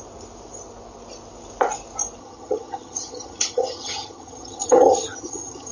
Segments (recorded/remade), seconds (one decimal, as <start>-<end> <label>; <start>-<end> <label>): 0.0-2.2 recorded; 2.2-5.7 remade